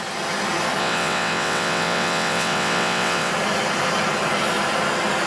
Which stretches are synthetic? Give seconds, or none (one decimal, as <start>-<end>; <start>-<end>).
0.8-3.3